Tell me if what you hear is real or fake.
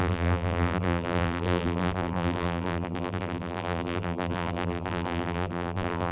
fake